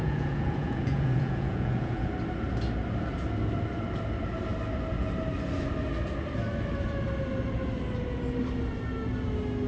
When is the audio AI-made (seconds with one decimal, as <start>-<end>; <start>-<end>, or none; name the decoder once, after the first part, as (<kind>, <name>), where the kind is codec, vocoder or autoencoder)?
0.0-2.1 (vocoder, Vocos)